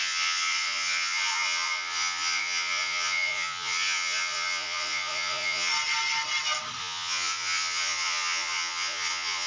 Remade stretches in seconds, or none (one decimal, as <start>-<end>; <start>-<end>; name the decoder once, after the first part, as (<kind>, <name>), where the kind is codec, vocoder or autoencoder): 0.0-5.7 (vocoder, Vocos); 6.8-9.5